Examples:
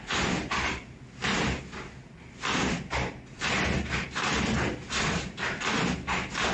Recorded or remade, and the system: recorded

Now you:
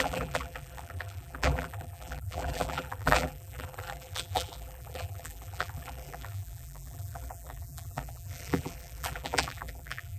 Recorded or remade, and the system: remade, vocoder, BigVGAN v2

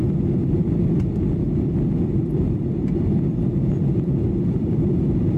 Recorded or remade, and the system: remade, vocoder, BigVGAN v2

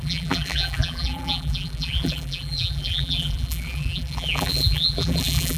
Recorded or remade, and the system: remade, vocoder, BigVGAN v2